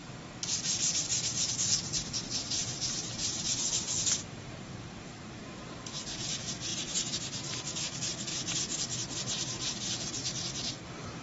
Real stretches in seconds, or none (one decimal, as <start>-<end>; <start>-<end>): 0.0-0.5; 8.3-10.3

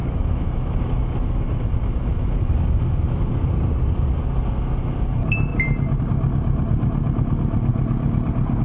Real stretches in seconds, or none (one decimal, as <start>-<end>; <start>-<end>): 3.3-8.6

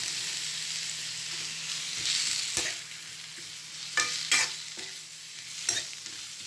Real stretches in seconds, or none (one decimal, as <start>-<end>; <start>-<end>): 0.0-6.5

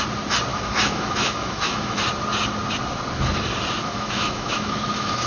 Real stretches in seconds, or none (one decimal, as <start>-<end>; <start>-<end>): 0.0-0.5; 2.0-3.8